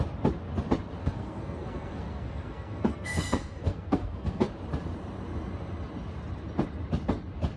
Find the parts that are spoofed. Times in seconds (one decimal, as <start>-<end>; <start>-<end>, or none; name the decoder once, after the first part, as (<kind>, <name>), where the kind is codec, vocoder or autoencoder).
1.0-4.5 (codec, SNAC)